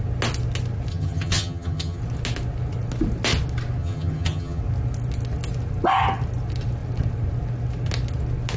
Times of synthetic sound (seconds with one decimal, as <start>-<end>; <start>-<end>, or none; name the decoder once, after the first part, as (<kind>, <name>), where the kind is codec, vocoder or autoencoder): 0.9-2.0 (vocoder, HiFi-GAN); 3.8-4.6